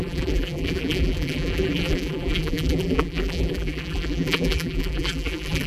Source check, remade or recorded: remade